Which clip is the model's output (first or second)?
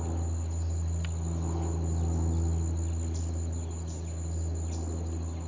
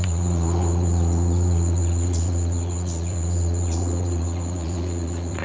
second